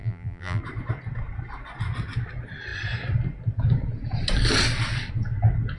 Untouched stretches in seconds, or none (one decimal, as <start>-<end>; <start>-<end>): 0.6-5.8